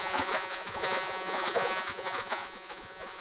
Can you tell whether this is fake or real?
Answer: fake